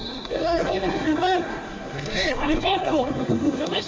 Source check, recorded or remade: remade